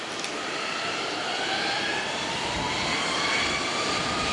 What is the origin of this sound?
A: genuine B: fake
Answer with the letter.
B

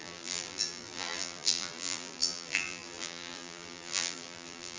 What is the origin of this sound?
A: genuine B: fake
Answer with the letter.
B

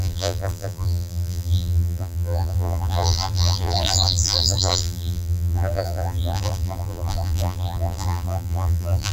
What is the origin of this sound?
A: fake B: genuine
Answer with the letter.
A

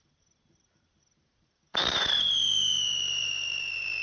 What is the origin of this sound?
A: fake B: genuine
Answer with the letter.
A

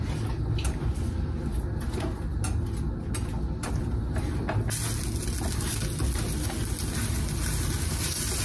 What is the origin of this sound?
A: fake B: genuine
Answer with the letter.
B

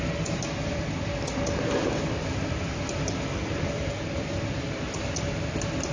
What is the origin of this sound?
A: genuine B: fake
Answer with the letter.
A